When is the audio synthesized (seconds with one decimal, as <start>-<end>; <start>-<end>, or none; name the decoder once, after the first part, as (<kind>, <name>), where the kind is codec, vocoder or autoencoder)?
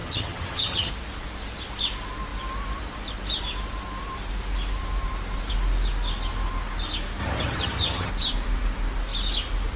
0.0-0.9 (vocoder, HiFi-GAN); 7.2-8.1